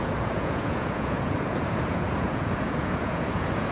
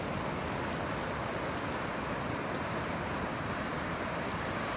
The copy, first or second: first